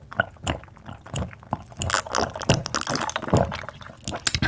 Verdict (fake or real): real